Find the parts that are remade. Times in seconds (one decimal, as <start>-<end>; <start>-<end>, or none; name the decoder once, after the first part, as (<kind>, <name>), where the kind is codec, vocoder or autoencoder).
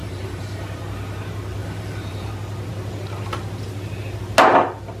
0.0-0.8 (vocoder, BigVGAN v2); 1.6-2.3